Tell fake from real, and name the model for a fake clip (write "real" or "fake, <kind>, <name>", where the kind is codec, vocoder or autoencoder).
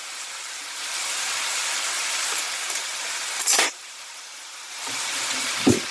fake, vocoder, BigVGAN v2